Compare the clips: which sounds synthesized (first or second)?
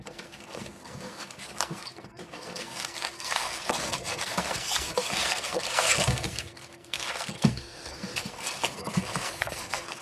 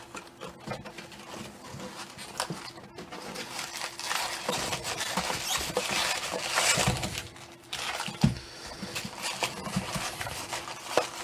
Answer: first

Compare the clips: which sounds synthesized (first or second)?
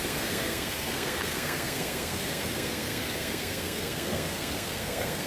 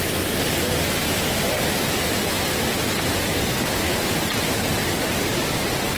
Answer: first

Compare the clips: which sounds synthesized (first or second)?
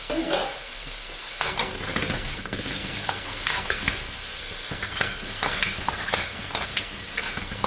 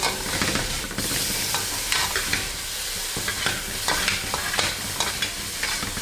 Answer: first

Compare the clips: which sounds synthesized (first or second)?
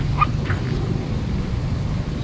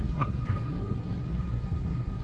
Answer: second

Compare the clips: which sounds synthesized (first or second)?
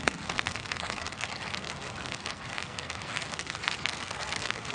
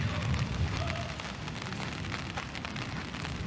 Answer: first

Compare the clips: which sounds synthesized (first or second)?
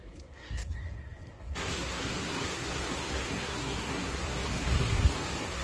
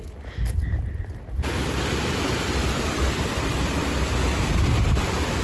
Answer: first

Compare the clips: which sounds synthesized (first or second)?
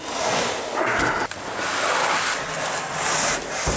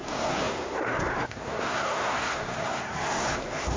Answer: second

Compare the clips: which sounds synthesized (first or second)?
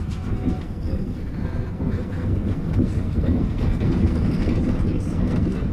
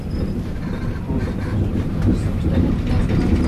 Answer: first